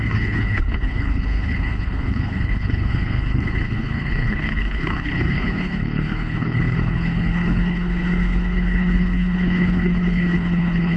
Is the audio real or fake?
fake